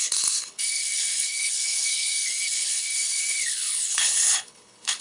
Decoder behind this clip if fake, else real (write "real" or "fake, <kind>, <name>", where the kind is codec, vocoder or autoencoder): fake, codec, HILCodec